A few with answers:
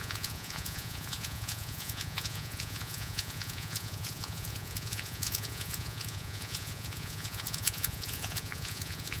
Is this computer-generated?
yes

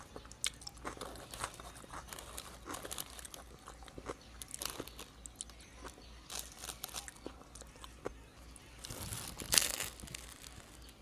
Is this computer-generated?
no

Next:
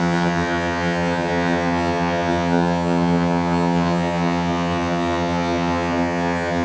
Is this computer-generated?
yes